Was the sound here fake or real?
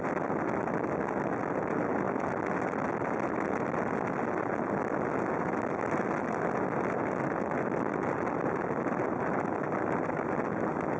real